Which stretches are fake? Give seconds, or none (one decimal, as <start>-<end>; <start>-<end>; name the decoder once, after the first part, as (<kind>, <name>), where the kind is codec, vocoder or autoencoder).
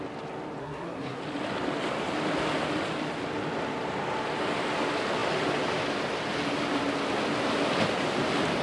0.6-1.2 (codec, SNAC)